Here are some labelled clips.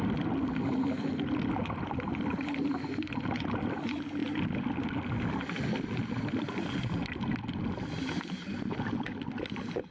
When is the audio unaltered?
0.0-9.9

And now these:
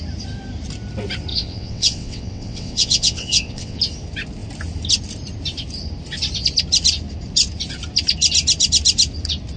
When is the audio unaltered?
0.0-1.3; 3.8-9.6

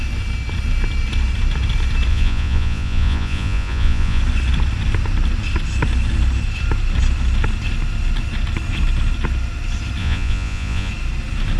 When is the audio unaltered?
0.0-2.1; 4.2-10.0; 10.9-11.6

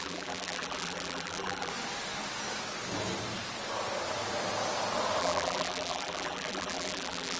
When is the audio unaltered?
1.7-5.2

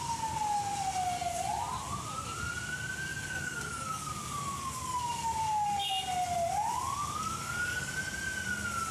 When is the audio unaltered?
0.0-3.1; 5.9-7.0; 7.9-8.9

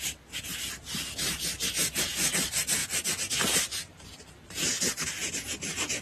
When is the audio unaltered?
0.0-2.8; 4.0-6.0

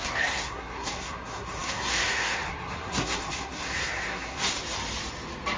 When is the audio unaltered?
4.4-5.6